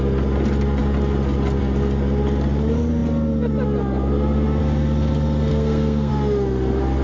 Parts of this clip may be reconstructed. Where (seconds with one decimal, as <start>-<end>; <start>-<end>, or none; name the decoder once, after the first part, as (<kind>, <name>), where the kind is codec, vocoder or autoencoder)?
5.5-6.1 (codec, SNAC)